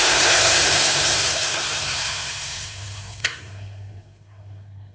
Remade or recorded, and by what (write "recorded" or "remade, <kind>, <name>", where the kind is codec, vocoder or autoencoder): remade, codec, SNAC